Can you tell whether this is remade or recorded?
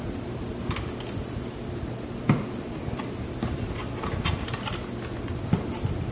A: recorded